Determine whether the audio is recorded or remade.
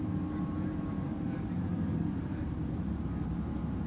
remade